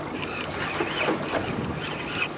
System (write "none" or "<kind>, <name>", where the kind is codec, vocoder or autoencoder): none